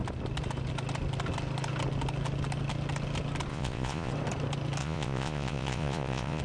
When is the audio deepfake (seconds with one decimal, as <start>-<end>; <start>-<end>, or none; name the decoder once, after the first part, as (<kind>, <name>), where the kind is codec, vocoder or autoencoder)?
3.5-4.1 (vocoder, Vocos); 4.8-6.4